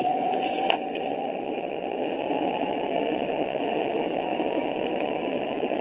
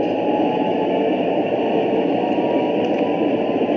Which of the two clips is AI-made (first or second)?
first